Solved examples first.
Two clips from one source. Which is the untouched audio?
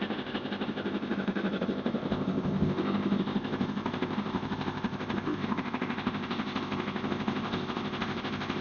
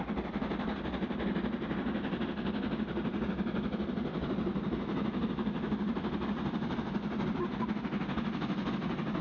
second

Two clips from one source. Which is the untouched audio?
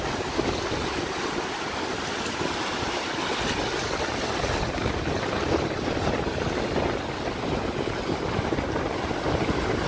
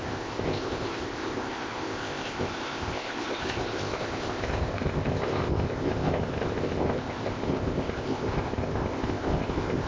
first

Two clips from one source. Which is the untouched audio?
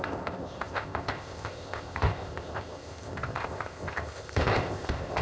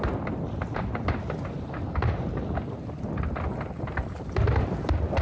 second